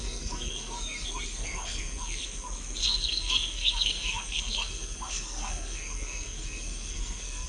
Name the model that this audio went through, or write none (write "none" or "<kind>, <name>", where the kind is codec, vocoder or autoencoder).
codec, SNAC